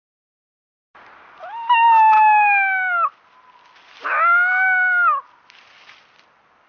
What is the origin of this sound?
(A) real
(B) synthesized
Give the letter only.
A